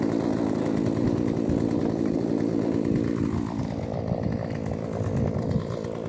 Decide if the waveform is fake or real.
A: real